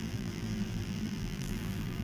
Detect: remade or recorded remade